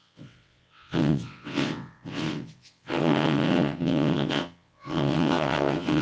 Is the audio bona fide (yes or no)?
no